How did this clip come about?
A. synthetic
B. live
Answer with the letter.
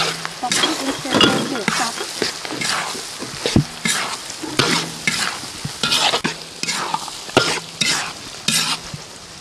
B